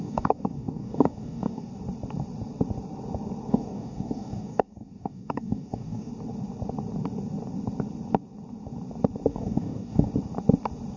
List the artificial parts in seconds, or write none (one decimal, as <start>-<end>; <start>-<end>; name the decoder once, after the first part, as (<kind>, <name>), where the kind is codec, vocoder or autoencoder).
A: 0.0-1.7 (codec, DAC); 3.5-6.1; 9.3-10.1

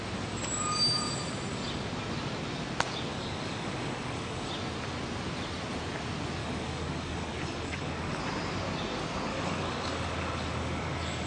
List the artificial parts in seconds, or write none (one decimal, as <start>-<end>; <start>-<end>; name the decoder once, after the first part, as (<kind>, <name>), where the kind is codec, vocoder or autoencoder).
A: 3.1-4.5 (codec, DAC); 6.4-8.2; 9.3-11.3